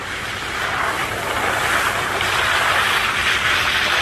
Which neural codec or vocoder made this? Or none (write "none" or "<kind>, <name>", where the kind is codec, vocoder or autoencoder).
vocoder, BigVGAN v2